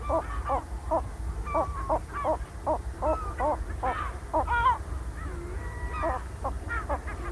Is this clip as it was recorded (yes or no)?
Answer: yes